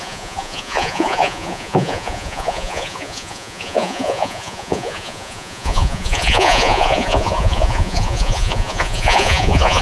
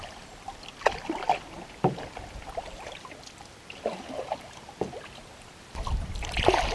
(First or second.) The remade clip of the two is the first